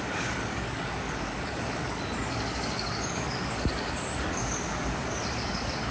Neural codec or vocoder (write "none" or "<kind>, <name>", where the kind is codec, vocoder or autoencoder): codec, DAC